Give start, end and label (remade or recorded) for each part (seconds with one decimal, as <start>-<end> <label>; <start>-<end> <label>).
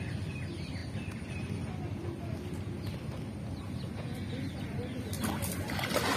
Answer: 0.0-6.2 recorded